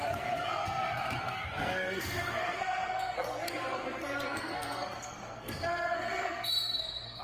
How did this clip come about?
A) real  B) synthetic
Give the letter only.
B